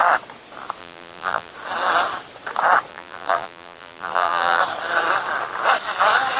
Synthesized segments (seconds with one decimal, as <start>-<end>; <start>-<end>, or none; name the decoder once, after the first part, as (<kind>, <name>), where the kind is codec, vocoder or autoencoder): 0.8-1.5 (vocoder, BigVGAN v2); 2.9-4.6